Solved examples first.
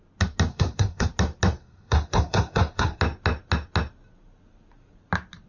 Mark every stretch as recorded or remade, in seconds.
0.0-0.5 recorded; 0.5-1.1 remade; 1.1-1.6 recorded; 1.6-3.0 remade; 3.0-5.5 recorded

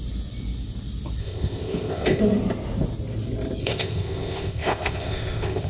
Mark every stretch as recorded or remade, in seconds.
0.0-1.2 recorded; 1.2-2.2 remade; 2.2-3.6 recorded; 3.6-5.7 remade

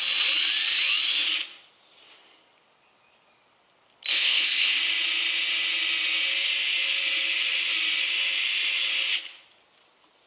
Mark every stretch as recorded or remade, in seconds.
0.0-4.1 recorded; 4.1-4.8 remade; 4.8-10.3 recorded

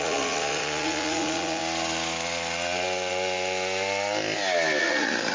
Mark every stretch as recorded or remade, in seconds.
0.0-1.6 remade; 1.6-4.8 recorded; 4.8-5.3 remade